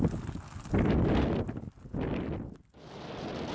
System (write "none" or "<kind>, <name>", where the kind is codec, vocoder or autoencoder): none